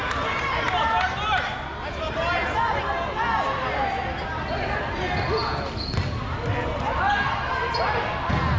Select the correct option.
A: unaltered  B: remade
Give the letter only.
A